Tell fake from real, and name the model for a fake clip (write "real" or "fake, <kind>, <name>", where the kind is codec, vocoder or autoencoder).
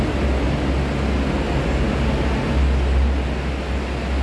real